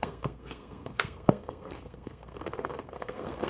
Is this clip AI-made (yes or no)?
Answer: yes